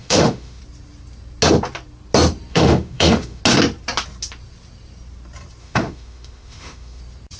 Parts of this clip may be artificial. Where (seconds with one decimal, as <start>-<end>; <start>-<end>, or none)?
0.0-0.6; 2.5-3.4; 5.6-7.0